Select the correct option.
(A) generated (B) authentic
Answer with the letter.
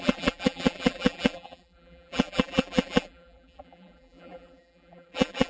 A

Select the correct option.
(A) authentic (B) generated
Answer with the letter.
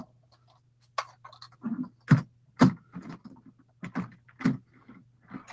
A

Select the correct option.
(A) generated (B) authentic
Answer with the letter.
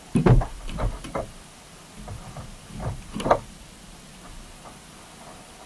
B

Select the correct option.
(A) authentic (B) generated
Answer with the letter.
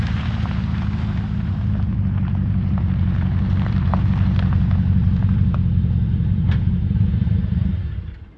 B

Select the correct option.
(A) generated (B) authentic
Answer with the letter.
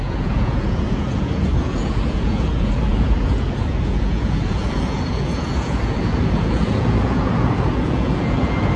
A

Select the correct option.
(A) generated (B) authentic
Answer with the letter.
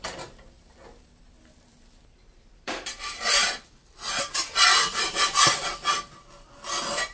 A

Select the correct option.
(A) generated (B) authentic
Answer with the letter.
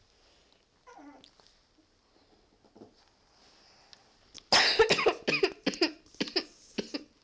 B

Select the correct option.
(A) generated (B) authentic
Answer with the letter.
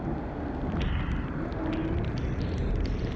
A